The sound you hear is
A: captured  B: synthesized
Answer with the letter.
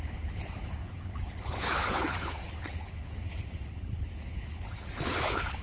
B